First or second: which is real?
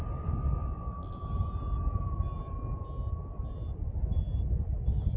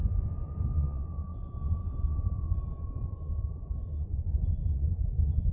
first